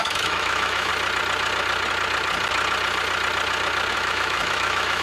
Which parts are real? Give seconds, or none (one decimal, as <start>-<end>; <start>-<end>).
0.9-3.9